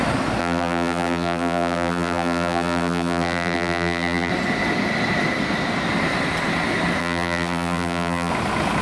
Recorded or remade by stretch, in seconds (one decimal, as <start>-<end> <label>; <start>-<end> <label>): 0.0-0.4 recorded; 0.4-4.3 remade; 4.3-7.0 recorded; 7.0-8.3 remade; 8.3-8.8 recorded